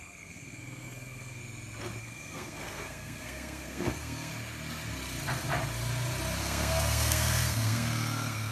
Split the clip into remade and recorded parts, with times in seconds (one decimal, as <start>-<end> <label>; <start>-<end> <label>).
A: 0.0-1.4 remade; 1.4-2.0 recorded; 2.0-4.3 remade; 4.3-6.4 recorded; 6.4-8.5 remade